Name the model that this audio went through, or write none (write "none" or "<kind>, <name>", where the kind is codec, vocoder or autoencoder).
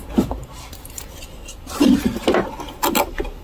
none